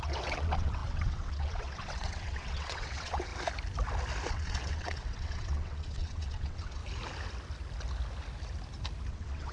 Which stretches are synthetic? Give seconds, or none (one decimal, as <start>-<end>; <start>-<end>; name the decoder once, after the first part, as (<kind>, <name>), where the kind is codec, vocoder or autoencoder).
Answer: 0.0-3.3 (vocoder, WaveNeXt); 4.3-6.8; 9.1-9.5